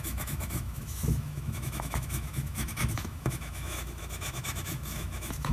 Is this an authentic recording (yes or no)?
no